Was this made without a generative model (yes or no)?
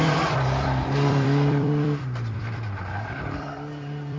no